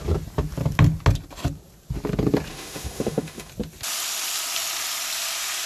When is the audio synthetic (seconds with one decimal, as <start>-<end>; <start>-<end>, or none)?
2.5-3.5